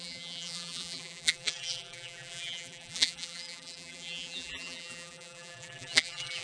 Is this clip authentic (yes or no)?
no